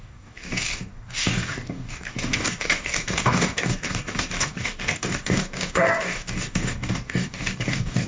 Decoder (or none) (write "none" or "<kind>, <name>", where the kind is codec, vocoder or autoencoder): codec, DAC